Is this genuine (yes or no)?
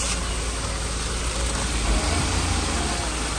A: yes